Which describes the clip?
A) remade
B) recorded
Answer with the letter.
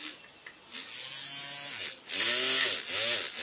B